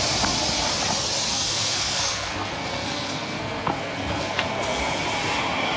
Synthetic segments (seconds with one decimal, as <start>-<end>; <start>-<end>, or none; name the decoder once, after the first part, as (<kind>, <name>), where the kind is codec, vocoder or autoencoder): 1.3-4.8 (codec, SNAC)